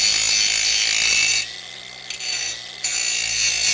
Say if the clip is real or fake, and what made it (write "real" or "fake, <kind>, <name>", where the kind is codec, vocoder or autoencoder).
real